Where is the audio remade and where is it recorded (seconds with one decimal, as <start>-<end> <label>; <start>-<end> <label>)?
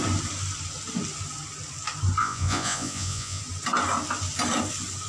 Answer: 0.0-2.2 recorded; 2.2-3.4 remade; 3.4-5.1 recorded